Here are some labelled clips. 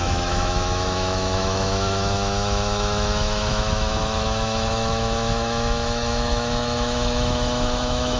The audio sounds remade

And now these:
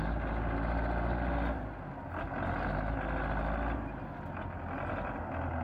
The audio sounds recorded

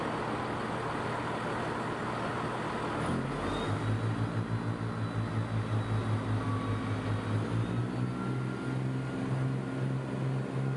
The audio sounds recorded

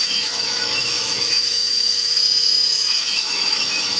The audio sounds remade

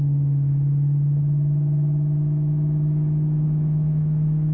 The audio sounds remade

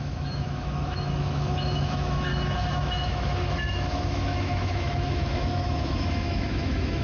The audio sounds remade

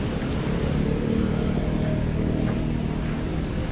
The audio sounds recorded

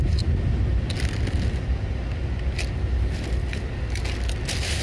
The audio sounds recorded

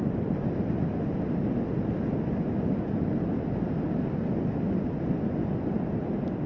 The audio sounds recorded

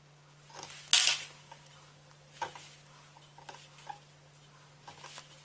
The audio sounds recorded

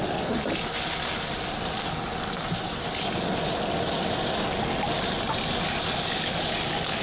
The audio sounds recorded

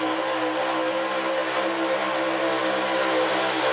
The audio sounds recorded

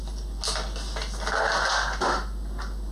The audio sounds recorded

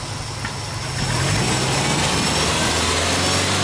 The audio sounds recorded